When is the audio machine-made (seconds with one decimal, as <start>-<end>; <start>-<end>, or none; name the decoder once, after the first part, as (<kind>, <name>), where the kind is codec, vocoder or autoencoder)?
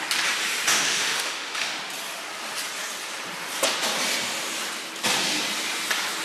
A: 0.7-1.8 (autoencoder, DAC-VAE)